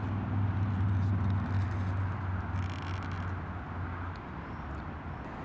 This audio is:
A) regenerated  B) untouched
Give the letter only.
B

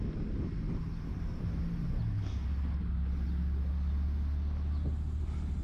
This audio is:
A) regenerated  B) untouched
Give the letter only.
B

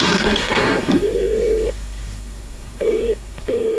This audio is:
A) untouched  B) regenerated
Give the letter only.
B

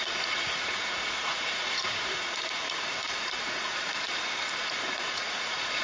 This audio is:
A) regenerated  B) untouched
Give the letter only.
A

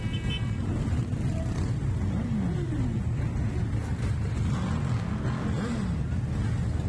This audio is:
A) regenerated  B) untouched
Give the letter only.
B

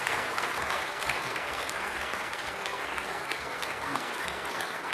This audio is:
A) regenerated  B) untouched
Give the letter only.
A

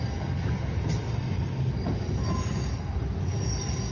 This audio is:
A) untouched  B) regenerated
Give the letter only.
A